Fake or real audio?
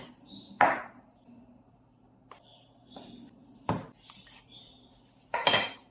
real